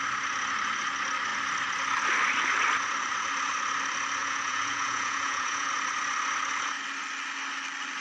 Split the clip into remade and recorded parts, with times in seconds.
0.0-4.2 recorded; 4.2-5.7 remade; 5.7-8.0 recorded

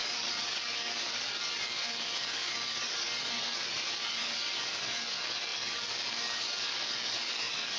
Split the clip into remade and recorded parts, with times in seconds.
0.0-7.8 remade